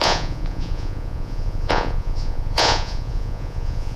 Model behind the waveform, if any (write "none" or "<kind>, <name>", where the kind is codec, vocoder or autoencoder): vocoder, Vocos